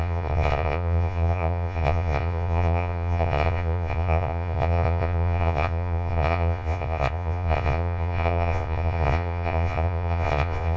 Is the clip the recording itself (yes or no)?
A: no